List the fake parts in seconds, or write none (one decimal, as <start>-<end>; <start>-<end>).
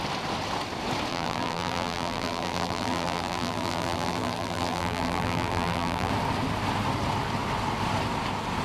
1.1-6.1